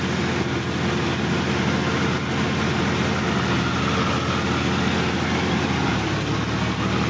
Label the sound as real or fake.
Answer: real